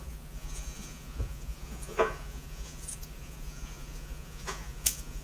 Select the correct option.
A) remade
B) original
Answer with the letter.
A